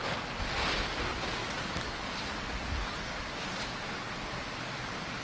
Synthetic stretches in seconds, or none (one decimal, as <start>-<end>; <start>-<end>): 1.4-2.1; 2.8-4.1

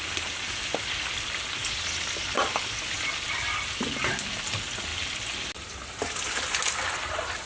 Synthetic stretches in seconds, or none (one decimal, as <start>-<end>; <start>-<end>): none

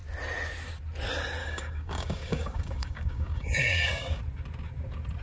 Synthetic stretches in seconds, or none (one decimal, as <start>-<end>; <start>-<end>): 1.4-4.2

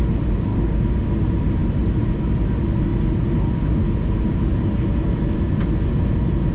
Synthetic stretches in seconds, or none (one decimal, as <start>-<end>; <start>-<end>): 0.5-1.1

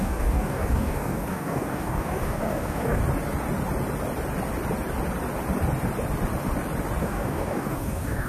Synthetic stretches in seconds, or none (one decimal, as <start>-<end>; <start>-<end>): 0.0-3.0; 7.0-8.3